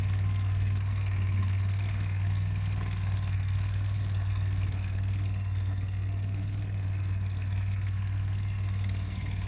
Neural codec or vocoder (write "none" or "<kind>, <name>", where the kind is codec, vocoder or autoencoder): codec, SNAC